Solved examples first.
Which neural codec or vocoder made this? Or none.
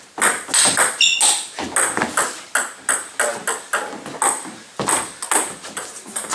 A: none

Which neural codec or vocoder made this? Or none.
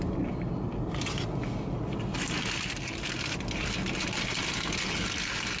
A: none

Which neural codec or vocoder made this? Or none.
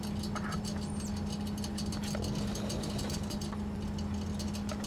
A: none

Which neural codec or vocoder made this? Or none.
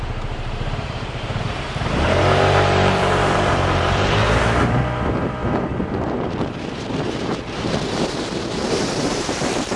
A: vocoder, BigVGAN v2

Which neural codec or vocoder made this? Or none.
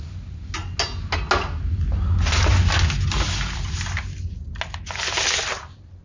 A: none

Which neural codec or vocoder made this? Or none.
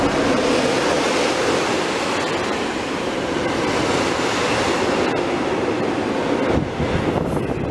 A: none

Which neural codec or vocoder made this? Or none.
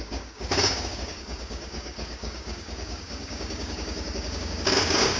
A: codec, DAC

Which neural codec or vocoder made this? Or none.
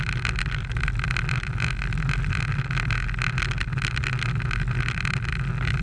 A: none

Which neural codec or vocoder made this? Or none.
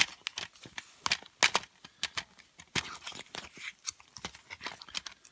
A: none